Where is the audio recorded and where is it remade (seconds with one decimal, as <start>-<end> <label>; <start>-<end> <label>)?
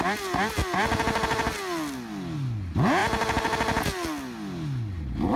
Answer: 0.0-5.4 recorded